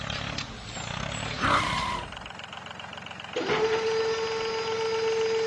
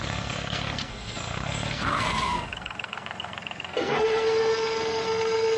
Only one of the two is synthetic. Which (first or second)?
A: second